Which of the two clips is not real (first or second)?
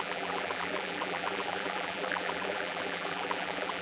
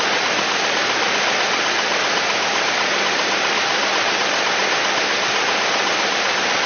first